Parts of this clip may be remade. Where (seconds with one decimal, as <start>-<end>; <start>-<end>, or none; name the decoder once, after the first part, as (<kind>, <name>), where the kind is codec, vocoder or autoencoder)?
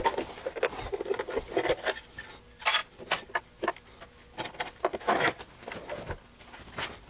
none